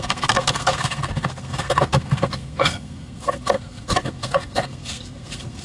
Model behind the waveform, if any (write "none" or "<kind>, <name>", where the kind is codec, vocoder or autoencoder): codec, SNAC